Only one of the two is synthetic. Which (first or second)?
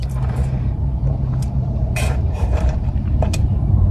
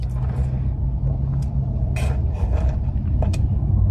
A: first